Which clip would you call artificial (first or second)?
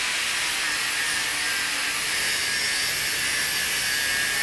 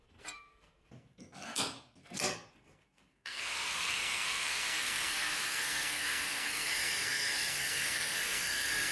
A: second